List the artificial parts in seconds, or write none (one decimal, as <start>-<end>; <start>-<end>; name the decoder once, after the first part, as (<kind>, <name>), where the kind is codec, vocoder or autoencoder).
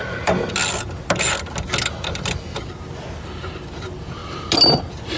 none